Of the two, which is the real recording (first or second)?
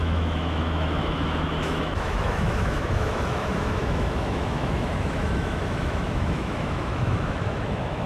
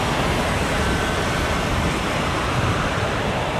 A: second